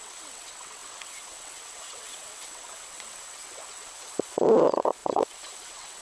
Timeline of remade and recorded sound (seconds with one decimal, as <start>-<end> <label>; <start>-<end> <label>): 0.0-6.0 remade